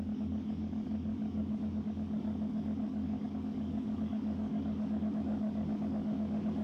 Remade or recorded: remade